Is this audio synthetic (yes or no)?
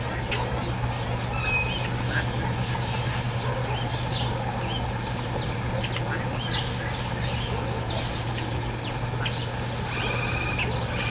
no